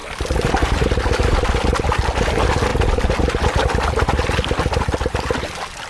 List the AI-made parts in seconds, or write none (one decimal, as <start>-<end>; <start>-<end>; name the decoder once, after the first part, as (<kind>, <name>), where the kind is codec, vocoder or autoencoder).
none